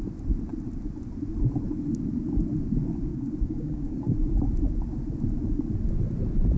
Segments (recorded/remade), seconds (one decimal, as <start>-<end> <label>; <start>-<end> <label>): 0.0-3.1 recorded; 3.1-4.0 remade; 4.0-6.6 recorded